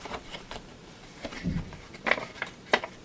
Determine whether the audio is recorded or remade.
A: remade